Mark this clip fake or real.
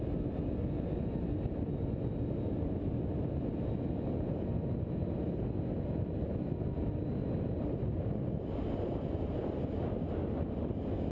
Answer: real